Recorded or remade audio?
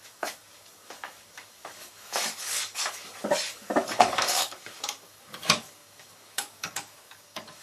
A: remade